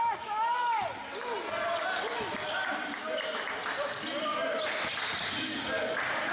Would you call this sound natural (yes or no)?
yes